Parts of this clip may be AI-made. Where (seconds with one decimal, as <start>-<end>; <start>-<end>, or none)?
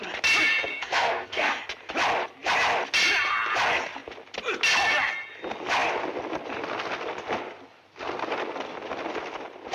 0.7-1.6